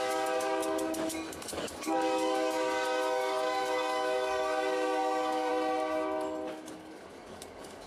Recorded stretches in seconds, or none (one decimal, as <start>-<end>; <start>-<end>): 0.6-1.4; 5.5-6.5